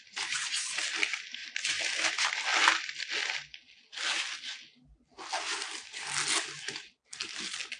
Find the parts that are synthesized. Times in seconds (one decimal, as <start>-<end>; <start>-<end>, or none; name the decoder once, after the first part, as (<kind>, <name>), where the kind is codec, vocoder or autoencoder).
none